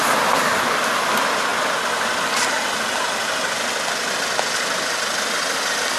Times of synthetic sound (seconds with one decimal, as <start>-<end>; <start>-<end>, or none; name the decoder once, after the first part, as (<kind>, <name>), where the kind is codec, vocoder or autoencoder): none